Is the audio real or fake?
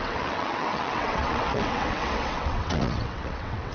fake